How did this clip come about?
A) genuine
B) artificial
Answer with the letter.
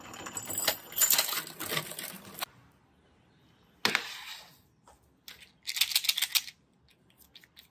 A